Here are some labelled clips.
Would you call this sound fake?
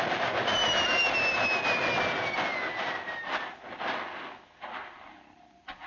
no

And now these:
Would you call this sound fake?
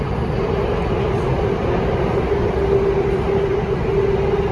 no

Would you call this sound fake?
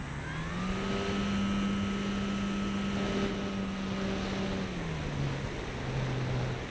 no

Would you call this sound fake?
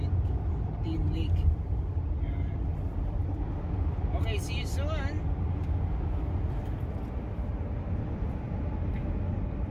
no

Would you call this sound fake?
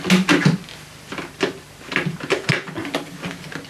no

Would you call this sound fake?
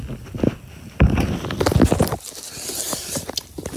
no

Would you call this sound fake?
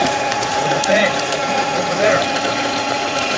yes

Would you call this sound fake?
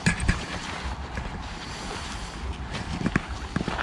no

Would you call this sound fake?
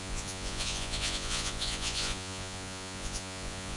yes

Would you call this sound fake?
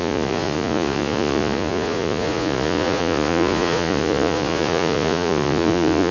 yes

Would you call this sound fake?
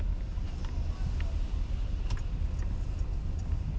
no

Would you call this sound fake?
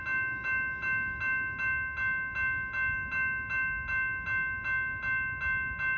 no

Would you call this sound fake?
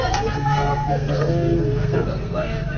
yes